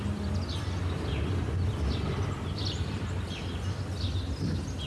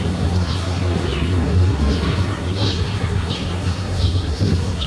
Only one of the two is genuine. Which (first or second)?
first